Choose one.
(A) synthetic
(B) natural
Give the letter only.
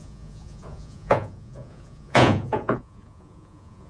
A